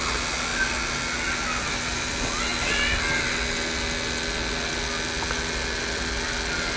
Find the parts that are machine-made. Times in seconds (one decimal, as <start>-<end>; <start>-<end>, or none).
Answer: none